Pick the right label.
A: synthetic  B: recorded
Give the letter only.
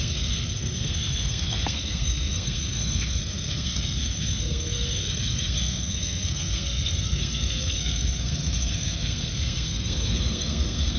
A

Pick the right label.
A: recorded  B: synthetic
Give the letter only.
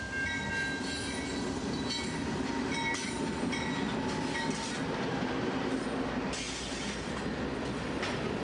A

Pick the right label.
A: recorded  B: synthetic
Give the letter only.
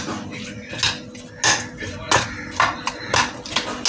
A